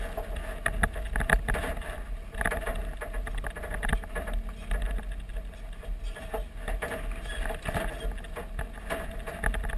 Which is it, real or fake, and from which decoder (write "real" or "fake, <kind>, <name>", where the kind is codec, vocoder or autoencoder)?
real